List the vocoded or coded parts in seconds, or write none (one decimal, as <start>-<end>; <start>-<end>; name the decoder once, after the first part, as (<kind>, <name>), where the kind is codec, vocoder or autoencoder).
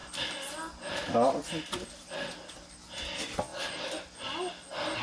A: none